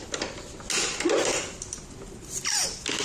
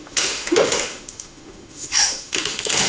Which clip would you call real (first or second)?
first